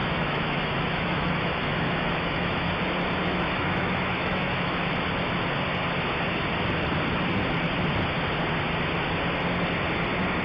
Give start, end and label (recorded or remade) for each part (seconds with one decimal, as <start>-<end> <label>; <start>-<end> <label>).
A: 0.0-2.7 remade; 2.7-3.2 recorded; 3.2-4.9 remade; 4.9-10.4 recorded